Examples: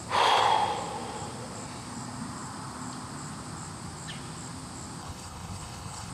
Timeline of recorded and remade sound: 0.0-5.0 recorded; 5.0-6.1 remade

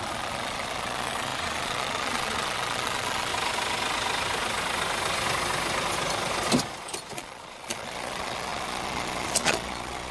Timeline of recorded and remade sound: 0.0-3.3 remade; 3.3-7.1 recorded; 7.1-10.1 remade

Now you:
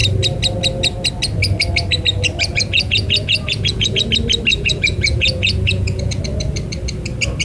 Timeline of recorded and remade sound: 0.0-2.5 recorded; 2.5-4.1 remade; 4.1-4.5 recorded; 4.5-6.2 remade; 6.2-7.4 recorded

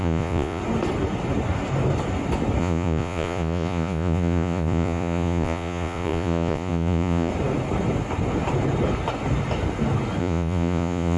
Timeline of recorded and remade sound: 0.0-0.6 remade; 0.6-2.6 recorded; 2.6-7.3 remade; 7.3-10.2 recorded; 10.2-11.2 remade

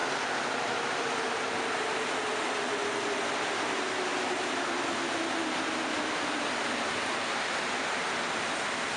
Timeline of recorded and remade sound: 0.0-9.0 recorded

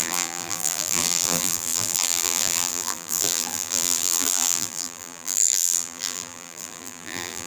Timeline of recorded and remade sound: 0.0-7.5 remade

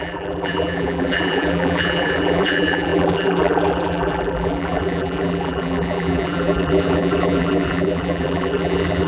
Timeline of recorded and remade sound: 0.0-9.1 remade

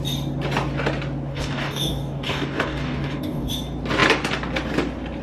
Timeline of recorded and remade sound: 0.0-1.3 recorded; 1.3-3.5 remade; 3.5-5.2 recorded